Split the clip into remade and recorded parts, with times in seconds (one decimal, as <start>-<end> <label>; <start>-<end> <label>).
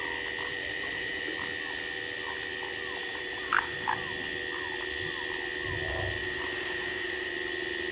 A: 0.0-0.5 recorded; 0.5-1.2 remade; 1.2-3.0 recorded; 3.0-3.9 remade; 3.9-6.2 recorded; 6.2-7.3 remade; 7.3-7.9 recorded